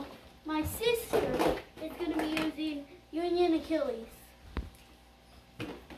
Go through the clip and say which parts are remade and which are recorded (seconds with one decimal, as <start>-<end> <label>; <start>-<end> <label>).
0.0-6.0 recorded